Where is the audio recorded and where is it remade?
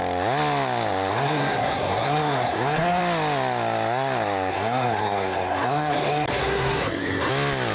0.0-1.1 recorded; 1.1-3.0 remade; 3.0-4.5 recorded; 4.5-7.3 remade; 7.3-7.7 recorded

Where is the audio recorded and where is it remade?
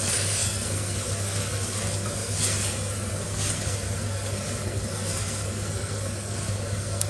0.0-7.1 remade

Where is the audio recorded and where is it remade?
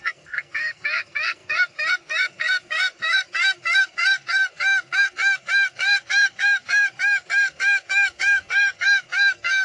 0.0-9.6 remade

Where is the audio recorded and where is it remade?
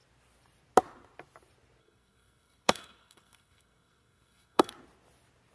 0.0-1.8 recorded; 1.8-4.7 remade; 4.7-5.5 recorded